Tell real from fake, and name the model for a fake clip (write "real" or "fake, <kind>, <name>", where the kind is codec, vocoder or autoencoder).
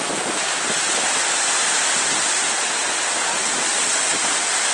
real